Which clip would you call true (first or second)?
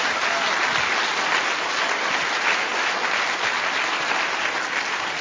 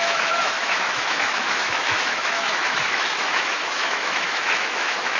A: first